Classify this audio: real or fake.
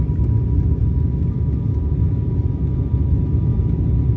real